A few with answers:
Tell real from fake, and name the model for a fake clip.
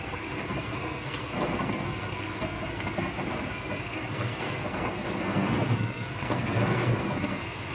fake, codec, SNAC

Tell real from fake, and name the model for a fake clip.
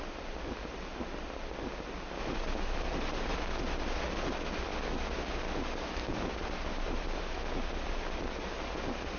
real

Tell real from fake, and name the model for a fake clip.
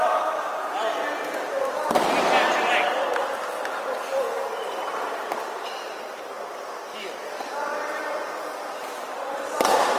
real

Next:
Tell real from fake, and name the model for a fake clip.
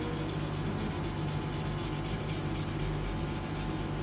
real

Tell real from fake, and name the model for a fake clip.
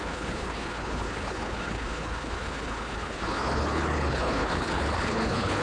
fake, codec, HILCodec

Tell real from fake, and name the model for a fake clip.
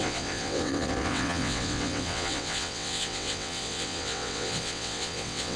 fake, vocoder, WaveNeXt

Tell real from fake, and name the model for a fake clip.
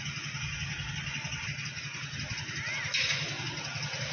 real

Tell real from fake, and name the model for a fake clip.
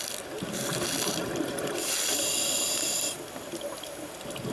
real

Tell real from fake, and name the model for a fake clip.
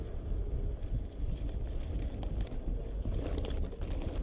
real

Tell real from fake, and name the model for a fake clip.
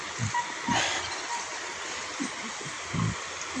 real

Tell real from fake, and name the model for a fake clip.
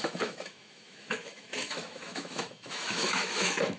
fake, autoencoder, DAC-VAE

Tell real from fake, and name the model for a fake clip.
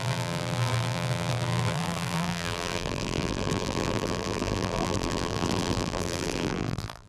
fake, vocoder, BigVGAN v2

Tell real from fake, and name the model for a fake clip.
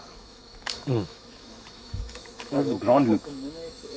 fake, autoencoder, DAC-VAE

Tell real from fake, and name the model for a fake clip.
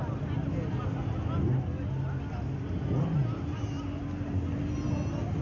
real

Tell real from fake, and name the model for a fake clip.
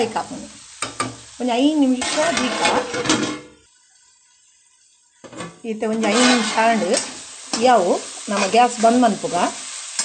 real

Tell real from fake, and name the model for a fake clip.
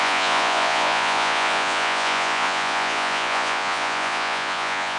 fake, vocoder, Vocos